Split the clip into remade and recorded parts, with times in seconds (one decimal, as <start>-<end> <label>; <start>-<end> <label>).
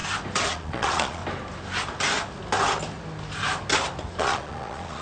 0.0-0.5 recorded; 0.5-1.2 remade; 1.2-4.2 recorded; 4.2-5.0 remade